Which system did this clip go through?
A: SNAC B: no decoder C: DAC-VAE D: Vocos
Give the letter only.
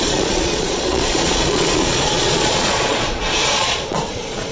D